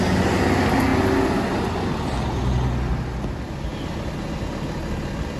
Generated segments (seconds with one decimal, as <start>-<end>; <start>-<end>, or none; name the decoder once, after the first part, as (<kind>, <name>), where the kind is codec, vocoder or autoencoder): none